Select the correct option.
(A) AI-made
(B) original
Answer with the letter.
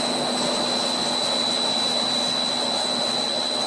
B